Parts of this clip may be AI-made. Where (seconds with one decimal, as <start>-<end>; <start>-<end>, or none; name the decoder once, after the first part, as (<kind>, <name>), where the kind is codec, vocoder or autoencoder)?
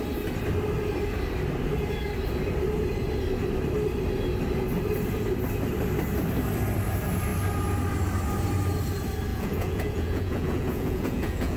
9.3-11.6 (vocoder, Vocos)